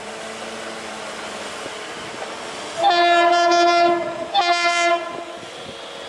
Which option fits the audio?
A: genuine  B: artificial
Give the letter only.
A